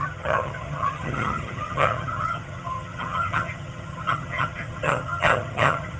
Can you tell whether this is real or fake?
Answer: fake